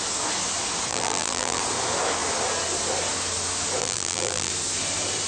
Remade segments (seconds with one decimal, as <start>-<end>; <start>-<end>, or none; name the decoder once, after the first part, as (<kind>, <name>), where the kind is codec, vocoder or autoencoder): 0.9-1.6 (vocoder, BigVGAN v2); 3.8-4.5